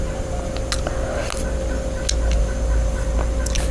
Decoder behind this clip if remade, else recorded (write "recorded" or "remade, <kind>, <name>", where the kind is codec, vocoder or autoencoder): recorded